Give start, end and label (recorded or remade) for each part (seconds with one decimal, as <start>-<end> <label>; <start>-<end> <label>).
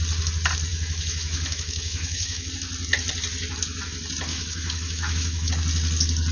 0.0-0.7 recorded; 0.7-2.5 remade; 2.5-4.3 recorded; 4.3-5.5 remade; 5.5-6.3 recorded